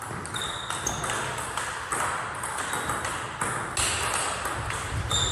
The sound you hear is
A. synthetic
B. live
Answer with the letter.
B